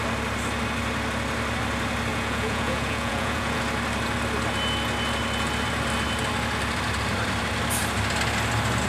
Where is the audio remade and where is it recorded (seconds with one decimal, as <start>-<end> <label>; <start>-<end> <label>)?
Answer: 0.0-2.1 recorded; 2.1-3.6 remade; 3.6-8.9 recorded